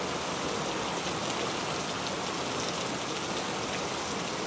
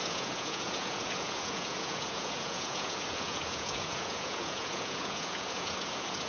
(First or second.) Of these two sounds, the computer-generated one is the second